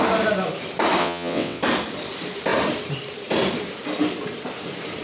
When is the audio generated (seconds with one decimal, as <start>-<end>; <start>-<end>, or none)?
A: 1.0-1.6

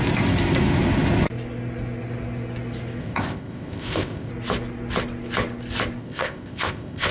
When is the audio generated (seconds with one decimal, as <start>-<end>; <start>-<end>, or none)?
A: 3.0-4.3; 6.0-7.1

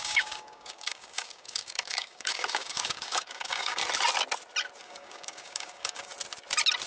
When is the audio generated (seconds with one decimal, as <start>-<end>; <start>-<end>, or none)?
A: 0.0-3.8; 4.8-6.1

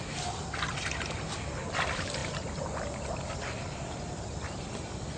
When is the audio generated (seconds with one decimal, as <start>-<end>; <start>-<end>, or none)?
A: none